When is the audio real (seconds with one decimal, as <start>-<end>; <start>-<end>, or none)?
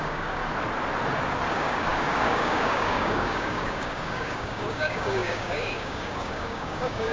0.4-1.5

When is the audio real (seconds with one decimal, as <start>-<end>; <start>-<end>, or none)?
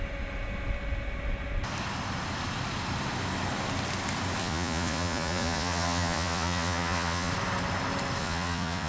0.0-4.4; 7.3-8.2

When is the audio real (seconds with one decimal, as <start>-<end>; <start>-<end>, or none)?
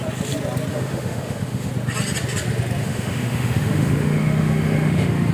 0.0-0.7; 1.7-2.8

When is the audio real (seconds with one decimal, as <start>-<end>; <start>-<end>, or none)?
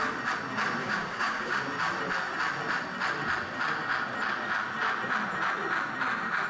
0.0-0.8; 1.6-6.5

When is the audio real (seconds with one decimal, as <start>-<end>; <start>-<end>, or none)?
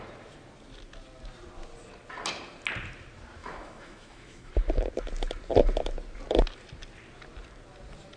0.0-3.4; 4.5-8.2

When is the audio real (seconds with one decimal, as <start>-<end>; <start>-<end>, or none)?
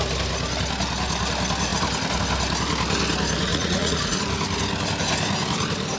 0.0-3.5; 4.2-6.0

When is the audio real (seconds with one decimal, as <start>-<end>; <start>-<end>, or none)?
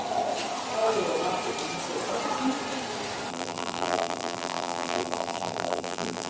0.0-3.3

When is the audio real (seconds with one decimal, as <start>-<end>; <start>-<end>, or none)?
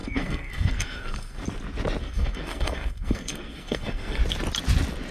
1.4-2.0; 4.2-5.1